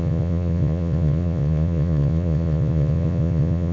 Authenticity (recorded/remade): remade